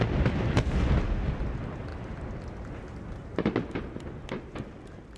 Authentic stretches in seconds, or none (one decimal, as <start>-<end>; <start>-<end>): 0.0-5.2